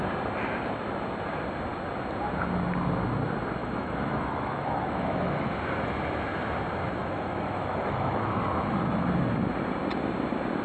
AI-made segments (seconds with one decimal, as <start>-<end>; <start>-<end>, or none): 3.6-5.5; 7.0-8.4